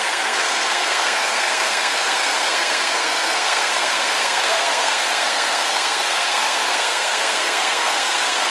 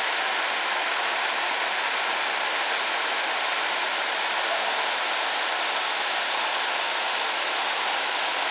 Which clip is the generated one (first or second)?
first